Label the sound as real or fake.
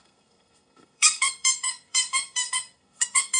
fake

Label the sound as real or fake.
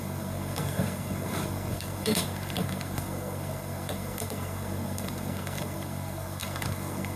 fake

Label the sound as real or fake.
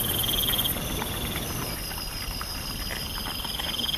real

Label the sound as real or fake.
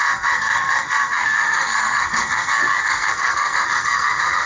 fake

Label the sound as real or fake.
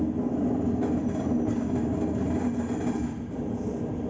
real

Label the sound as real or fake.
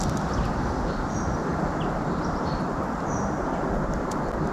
real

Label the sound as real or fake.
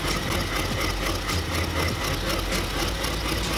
real